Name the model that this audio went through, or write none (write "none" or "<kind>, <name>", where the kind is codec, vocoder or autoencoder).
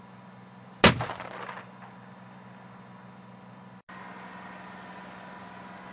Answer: none